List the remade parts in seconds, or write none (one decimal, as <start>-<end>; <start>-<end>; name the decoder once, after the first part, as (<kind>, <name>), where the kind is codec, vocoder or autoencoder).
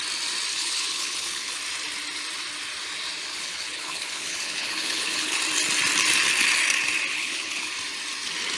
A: 0.5-1.6 (codec, HILCodec); 3.3-5.4; 7.1-7.7